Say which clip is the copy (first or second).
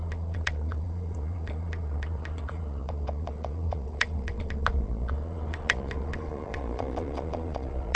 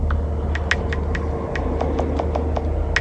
first